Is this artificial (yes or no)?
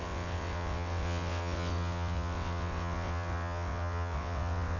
yes